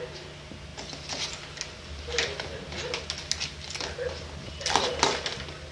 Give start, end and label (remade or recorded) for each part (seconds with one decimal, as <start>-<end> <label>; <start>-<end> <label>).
0.0-5.7 recorded